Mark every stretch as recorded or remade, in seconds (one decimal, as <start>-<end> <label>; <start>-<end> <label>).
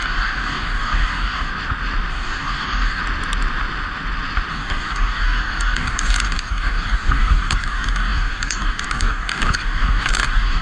0.0-1.5 remade; 1.5-2.1 recorded; 2.1-3.0 remade; 3.0-4.5 recorded; 4.5-10.6 remade